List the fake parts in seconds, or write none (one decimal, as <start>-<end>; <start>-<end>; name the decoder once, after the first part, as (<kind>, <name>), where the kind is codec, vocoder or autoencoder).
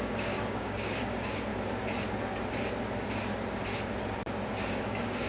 0.0-1.5 (codec, DAC); 4.7-5.3